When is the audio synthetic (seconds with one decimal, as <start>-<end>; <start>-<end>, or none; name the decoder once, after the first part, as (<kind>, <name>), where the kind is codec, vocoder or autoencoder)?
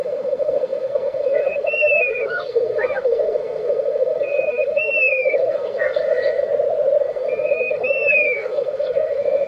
0.0-6.5 (codec, SNAC); 7.0-9.5